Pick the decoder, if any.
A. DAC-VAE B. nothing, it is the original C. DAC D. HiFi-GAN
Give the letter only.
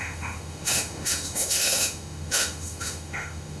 A